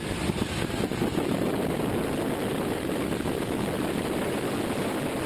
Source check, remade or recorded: recorded